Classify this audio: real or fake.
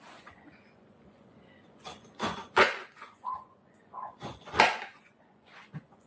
fake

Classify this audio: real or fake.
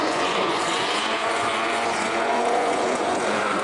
fake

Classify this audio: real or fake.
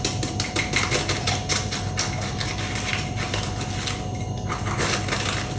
real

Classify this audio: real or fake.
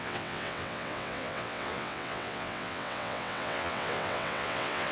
fake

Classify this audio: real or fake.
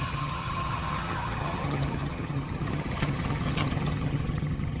fake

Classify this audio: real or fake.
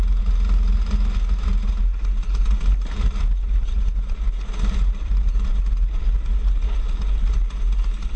real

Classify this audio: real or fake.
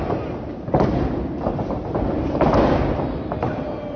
real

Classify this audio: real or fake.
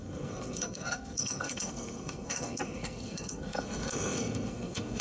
fake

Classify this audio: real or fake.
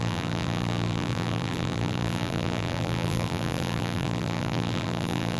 fake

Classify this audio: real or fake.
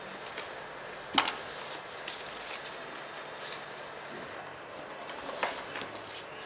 real